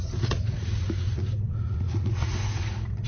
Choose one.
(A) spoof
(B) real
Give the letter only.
A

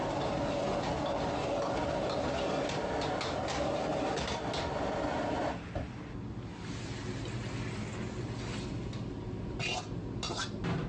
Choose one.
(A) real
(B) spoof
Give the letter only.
A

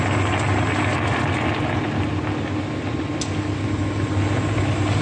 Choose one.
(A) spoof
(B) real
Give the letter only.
B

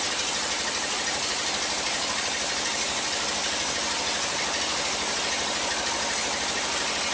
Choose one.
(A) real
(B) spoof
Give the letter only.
A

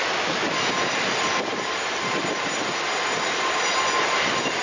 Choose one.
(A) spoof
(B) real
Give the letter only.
B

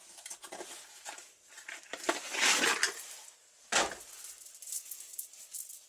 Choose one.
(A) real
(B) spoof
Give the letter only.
A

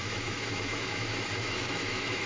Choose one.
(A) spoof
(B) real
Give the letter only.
A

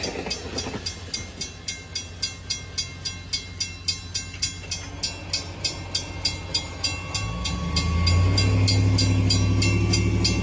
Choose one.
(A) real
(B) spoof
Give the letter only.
A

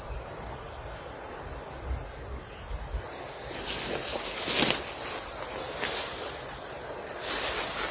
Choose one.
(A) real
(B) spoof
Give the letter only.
A